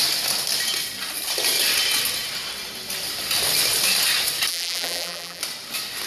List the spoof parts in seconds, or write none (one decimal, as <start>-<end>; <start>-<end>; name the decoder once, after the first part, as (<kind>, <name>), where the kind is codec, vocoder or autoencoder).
4.5-5.4 (vocoder, BigVGAN v2)